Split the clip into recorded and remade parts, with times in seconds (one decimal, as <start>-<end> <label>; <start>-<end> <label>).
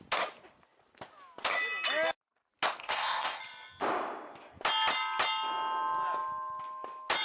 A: 0.0-2.8 recorded; 2.8-3.4 remade; 3.4-7.2 recorded